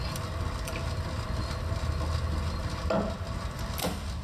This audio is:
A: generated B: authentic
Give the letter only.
B